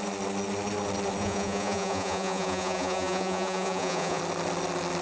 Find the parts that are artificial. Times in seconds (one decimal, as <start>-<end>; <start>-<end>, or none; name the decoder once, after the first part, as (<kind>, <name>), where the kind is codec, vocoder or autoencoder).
1.2-4.2 (vocoder, Vocos)